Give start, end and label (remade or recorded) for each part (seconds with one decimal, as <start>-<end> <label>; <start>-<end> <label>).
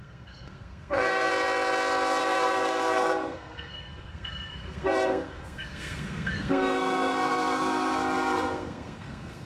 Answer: 0.0-1.3 remade; 1.3-2.2 recorded; 2.2-9.4 remade